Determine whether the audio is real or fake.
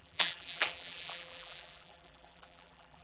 fake